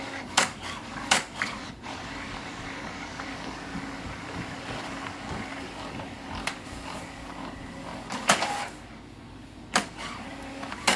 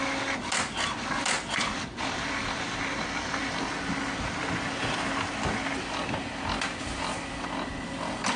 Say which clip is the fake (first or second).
first